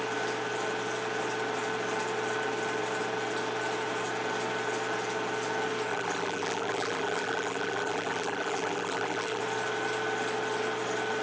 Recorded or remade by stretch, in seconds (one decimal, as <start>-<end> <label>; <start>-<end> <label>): 0.0-5.9 recorded; 5.9-9.4 remade; 9.4-11.2 recorded